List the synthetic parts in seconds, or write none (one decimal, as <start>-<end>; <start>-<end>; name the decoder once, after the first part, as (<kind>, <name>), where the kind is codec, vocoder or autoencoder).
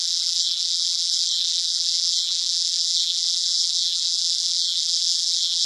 0.0-5.7 (vocoder, BigVGAN v2)